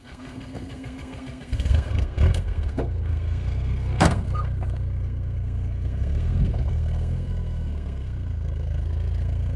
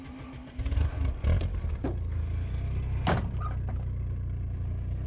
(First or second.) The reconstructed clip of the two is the first